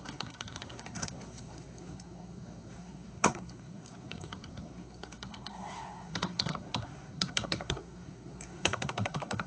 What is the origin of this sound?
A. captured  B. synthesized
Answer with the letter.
B